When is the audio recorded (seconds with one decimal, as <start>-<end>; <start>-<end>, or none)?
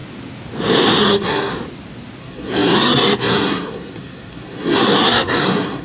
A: 0.0-1.0; 1.5-2.2